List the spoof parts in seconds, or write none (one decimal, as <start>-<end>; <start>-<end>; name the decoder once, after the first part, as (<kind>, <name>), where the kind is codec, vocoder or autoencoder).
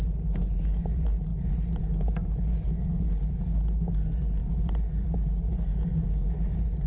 none